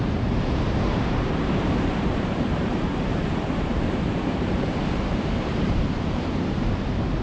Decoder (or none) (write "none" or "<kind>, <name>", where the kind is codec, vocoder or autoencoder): vocoder, BigVGAN v2